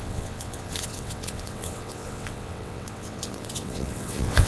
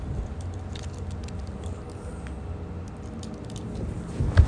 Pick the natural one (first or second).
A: second